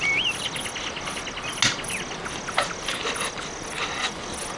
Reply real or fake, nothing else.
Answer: real